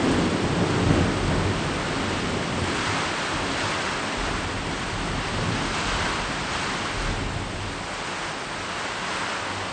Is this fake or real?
real